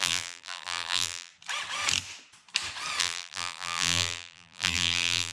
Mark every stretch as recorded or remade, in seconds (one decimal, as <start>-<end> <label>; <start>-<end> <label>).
0.0-1.3 remade; 1.3-3.0 recorded; 3.0-5.3 remade